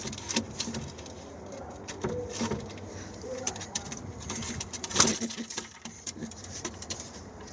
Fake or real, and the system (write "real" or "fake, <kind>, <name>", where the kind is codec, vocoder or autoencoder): fake, vocoder, BigVGAN v2